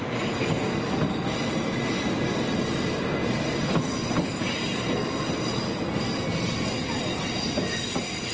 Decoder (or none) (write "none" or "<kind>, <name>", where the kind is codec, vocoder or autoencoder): none